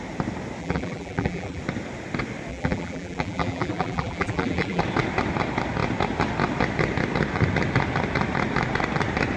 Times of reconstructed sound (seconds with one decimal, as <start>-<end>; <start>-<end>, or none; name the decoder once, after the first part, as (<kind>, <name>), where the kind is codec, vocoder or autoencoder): 0.6-1.6 (vocoder, BigVGAN v2); 2.5-4.8